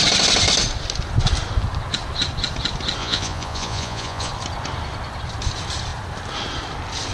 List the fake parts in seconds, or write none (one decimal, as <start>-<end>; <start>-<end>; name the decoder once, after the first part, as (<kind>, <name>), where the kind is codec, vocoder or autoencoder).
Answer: 3.0-4.3 (vocoder, Vocos)